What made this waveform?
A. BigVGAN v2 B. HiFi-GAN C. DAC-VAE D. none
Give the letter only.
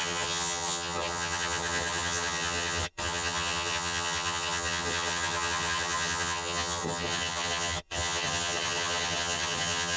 B